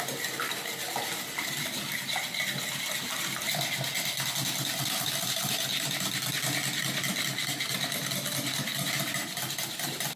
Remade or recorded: recorded